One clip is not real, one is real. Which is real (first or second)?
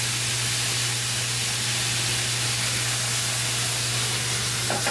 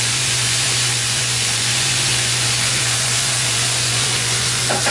first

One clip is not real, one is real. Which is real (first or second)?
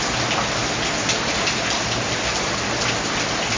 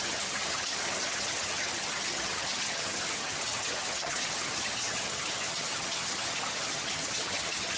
first